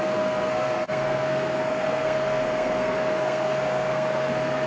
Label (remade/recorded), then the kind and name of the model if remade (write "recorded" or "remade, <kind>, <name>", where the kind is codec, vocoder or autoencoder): remade, codec, SNAC